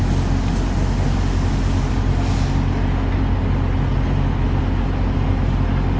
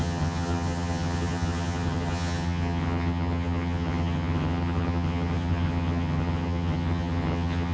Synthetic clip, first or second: second